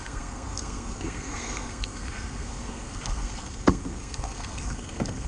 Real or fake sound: fake